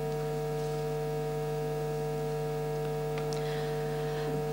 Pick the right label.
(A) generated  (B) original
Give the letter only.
B